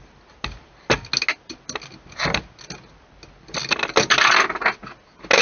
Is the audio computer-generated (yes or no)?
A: no